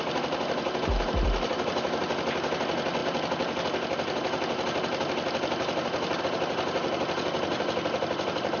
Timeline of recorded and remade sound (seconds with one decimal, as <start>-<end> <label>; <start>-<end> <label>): 0.0-8.6 recorded